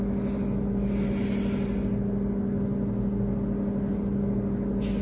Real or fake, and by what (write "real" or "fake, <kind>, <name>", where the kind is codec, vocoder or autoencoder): real